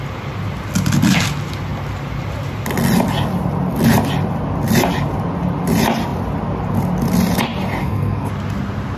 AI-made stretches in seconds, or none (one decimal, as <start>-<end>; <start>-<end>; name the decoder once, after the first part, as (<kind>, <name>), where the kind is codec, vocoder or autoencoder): 7.8-8.3 (codec, SNAC)